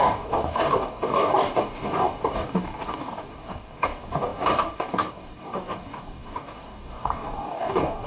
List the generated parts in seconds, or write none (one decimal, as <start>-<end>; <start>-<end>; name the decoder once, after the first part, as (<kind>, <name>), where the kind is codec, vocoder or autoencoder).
0.0-8.1 (codec, DAC)